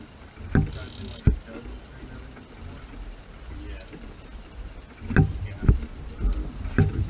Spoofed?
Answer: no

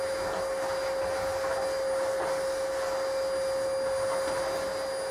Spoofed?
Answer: no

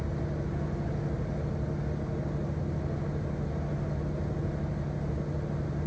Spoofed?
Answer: no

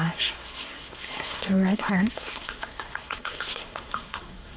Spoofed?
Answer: yes